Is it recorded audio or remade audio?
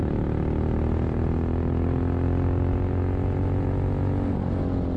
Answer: recorded